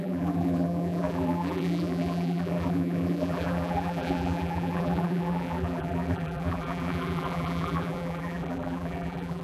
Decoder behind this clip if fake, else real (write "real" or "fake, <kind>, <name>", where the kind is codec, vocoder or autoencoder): fake, vocoder, BigVGAN v2